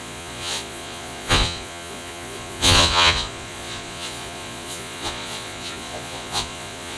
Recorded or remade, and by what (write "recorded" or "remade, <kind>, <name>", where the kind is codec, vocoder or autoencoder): remade, vocoder, Vocos